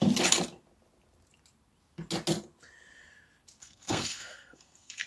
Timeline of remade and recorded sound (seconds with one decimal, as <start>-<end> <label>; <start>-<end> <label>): 0.0-3.6 recorded; 3.6-5.1 remade